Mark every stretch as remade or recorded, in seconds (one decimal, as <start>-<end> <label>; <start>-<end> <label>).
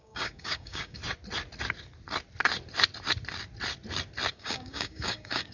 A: 0.0-1.0 remade; 1.0-4.3 recorded; 4.3-5.5 remade